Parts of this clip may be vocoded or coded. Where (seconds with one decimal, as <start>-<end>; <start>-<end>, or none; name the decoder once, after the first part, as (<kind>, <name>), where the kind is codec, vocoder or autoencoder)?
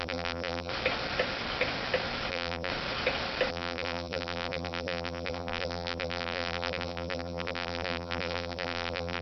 0.0-0.7 (vocoder, BigVGAN v2); 2.3-2.7; 3.5-9.2